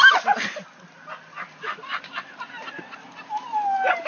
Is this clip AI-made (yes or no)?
no